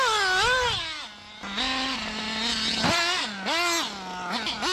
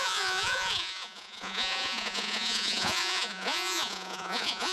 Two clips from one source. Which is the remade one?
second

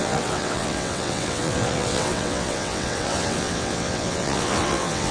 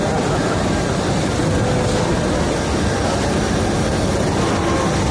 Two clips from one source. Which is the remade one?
first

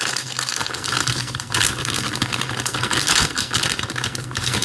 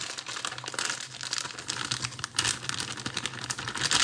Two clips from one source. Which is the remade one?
first